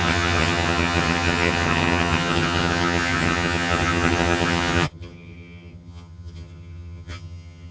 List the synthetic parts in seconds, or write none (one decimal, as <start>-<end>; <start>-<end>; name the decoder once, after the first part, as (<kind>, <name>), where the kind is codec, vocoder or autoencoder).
0.0-7.7 (vocoder, HiFi-GAN)